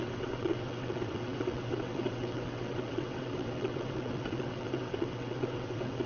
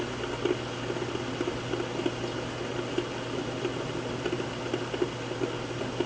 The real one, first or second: second